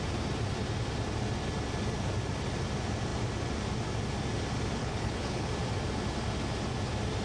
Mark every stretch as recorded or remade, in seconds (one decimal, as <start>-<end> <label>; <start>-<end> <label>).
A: 0.0-4.8 recorded; 4.8-5.5 remade; 5.5-7.2 recorded